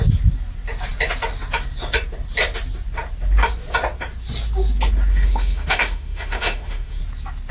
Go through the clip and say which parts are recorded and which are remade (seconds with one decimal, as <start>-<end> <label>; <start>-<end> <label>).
0.0-5.1 recorded; 5.1-7.0 remade; 7.0-7.5 recorded

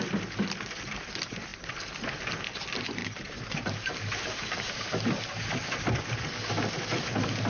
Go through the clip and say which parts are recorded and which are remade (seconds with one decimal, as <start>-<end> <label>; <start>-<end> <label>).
0.0-3.0 recorded; 3.0-5.6 remade; 5.6-7.5 recorded

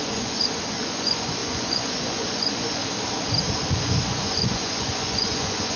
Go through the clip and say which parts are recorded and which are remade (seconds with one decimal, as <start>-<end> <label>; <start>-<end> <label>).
0.0-2.8 remade; 2.8-3.7 recorded; 3.7-5.8 remade